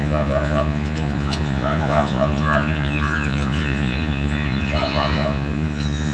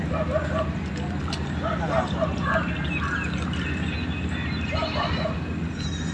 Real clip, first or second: second